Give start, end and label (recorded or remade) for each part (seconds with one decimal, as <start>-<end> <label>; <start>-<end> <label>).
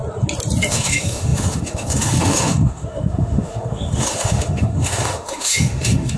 0.0-0.7 recorded; 0.7-6.2 remade